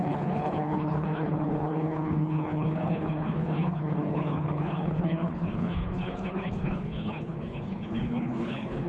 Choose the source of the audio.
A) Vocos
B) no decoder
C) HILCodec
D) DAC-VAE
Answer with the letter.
C